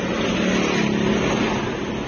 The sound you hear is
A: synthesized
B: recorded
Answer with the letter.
B